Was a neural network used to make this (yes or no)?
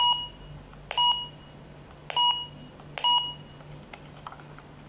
no